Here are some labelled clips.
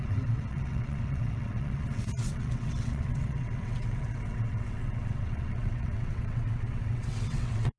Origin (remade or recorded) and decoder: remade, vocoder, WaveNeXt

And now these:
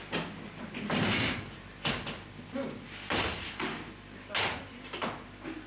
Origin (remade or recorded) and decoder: recorded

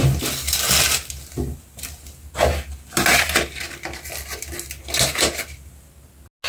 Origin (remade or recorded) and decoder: recorded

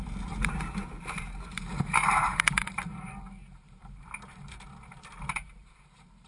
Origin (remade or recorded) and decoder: remade, vocoder, BigVGAN v2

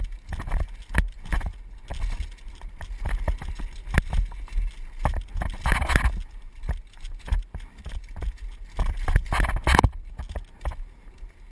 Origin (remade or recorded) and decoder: recorded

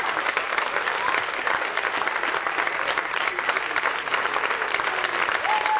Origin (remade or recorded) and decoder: recorded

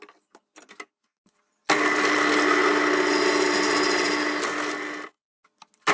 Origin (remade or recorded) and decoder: recorded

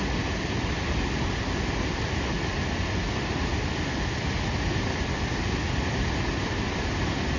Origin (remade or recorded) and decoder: recorded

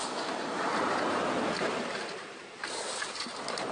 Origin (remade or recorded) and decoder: remade, vocoder, BigVGAN v2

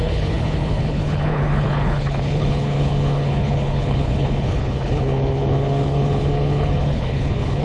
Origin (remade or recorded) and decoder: remade, codec, HILCodec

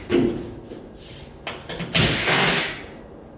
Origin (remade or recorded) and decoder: recorded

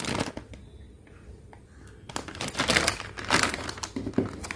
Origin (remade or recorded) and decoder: recorded